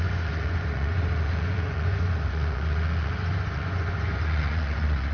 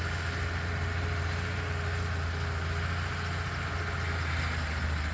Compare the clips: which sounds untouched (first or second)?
second